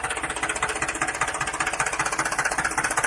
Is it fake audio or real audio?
real